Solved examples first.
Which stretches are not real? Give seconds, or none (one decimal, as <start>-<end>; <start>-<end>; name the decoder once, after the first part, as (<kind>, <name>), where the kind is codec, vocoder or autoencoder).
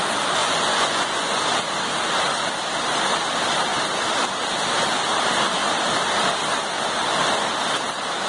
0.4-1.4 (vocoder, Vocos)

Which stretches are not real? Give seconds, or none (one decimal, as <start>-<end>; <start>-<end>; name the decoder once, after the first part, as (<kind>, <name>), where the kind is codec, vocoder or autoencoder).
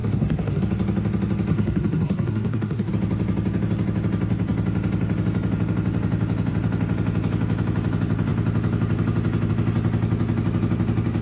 0.0-0.6 (codec, SNAC); 1.5-2.9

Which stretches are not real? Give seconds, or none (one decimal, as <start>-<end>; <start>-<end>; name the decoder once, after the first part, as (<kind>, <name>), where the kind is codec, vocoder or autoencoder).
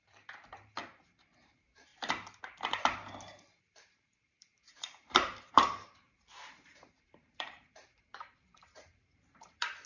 0.0-0.8 (vocoder, BigVGAN v2); 1.4-1.9; 3.6-9.9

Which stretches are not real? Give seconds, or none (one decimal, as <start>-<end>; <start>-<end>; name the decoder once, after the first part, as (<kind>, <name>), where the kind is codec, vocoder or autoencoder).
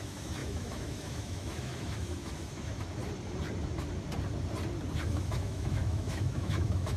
0.0-3.0 (autoencoder, DAC-VAE); 5.1-7.0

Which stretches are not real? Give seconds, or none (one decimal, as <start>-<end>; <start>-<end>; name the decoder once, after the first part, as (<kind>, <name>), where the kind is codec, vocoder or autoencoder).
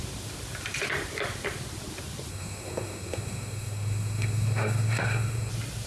2.3-5.5 (codec, SNAC)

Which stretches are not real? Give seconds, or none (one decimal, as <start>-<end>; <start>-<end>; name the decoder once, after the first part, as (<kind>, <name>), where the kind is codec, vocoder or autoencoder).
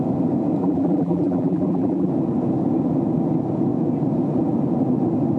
0.6-2.1 (vocoder, BigVGAN v2)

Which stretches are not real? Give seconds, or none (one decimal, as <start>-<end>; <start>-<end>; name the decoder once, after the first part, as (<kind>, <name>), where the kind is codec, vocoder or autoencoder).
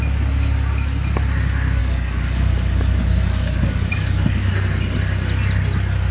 1.8-4.5 (codec, DAC)